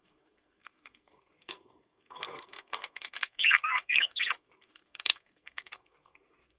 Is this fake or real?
fake